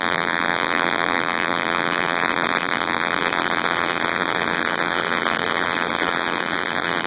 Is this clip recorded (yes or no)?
no